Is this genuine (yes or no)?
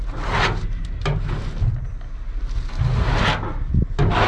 yes